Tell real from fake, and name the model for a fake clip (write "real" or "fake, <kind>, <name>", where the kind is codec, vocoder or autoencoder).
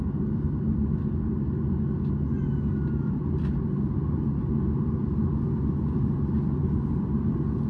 real